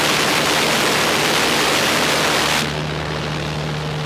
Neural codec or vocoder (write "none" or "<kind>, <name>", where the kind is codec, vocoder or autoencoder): none